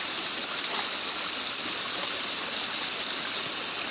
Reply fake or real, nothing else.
real